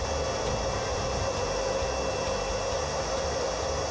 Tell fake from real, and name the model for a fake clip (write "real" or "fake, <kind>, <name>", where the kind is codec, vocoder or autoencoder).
real